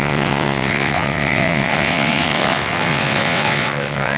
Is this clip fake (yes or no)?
yes